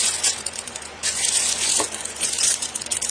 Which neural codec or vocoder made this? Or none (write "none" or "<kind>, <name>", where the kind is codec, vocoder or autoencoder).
vocoder, Vocos